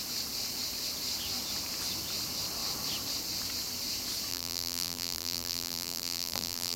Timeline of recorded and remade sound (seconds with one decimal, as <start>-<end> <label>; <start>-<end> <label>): 0.0-4.3 recorded; 4.3-6.8 remade